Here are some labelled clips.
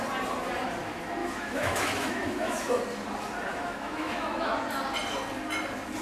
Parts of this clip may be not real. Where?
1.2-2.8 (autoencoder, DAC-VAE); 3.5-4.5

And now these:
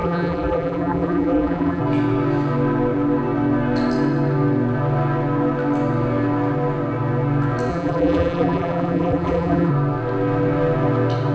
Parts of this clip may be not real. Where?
0.0-1.8 (vocoder, BigVGAN v2); 7.7-9.7

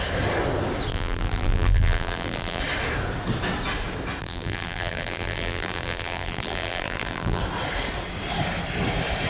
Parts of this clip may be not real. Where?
0.9-2.6 (vocoder, BigVGAN v2); 4.2-7.4

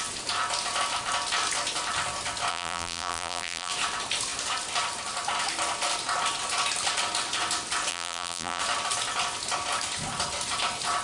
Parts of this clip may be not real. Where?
2.5-3.7 (vocoder, BigVGAN v2); 7.9-8.6

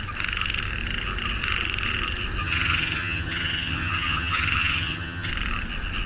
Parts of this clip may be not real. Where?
2.4-5.3 (vocoder, HiFi-GAN)

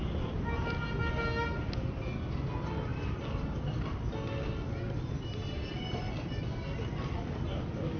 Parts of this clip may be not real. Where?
none

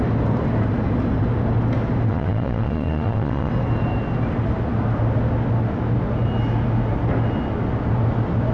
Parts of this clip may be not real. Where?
2.1-3.5 (vocoder, Vocos)